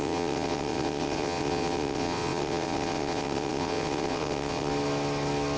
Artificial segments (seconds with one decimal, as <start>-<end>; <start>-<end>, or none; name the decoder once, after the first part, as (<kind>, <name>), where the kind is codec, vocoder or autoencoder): 0.0-4.7 (vocoder, WaveNeXt)